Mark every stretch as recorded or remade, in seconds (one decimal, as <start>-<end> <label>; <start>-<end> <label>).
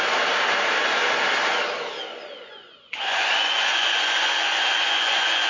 0.0-2.1 recorded; 2.1-5.5 remade